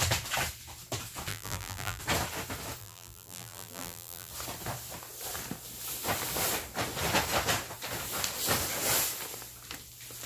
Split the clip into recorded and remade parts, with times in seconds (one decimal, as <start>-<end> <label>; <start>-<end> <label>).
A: 0.0-1.3 recorded; 1.3-2.0 remade; 2.0-2.8 recorded; 2.8-4.3 remade; 4.3-10.3 recorded